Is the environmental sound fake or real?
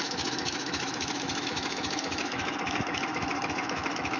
fake